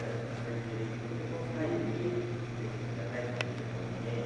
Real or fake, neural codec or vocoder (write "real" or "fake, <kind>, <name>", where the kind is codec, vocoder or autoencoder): real